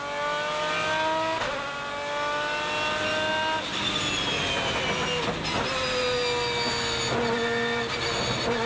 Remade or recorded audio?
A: recorded